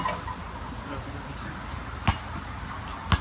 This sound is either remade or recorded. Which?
recorded